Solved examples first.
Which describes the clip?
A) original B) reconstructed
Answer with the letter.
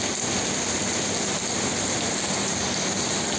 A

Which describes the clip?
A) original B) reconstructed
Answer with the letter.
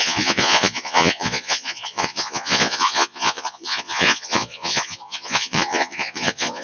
B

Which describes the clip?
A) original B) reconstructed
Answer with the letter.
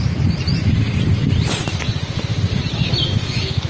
A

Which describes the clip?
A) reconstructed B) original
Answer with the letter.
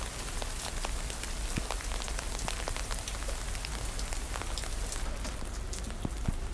B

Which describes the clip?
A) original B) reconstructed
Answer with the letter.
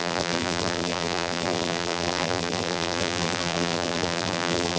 B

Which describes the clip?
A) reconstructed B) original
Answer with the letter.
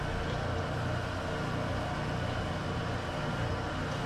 B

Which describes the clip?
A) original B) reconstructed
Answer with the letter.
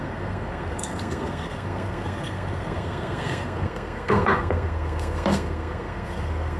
B